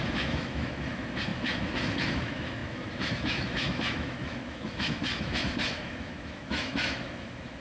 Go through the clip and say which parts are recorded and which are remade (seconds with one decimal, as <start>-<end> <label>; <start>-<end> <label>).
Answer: 0.0-7.6 remade